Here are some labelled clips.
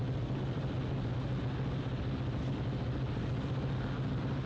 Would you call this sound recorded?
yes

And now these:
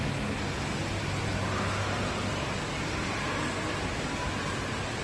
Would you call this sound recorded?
yes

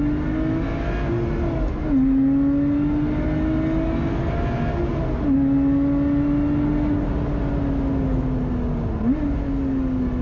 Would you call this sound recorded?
yes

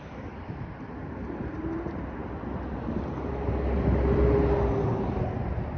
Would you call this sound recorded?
yes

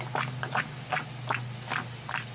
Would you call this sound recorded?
yes